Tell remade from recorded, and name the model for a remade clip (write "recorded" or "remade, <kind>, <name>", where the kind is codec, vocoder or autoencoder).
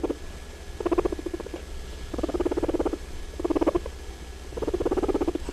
recorded